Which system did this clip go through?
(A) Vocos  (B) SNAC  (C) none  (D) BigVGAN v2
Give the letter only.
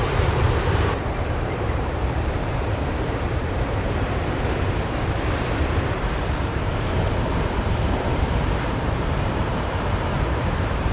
D